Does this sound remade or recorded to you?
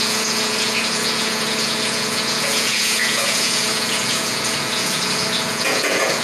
remade